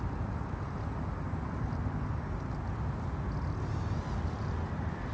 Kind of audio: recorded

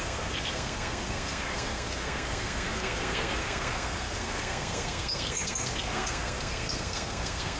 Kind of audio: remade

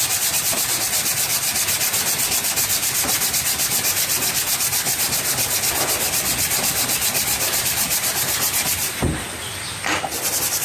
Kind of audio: recorded